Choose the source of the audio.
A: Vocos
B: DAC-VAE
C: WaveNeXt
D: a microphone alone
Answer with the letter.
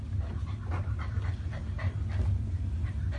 D